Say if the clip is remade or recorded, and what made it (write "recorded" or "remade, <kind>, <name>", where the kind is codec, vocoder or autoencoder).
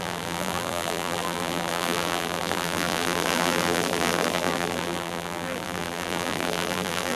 remade, vocoder, BigVGAN v2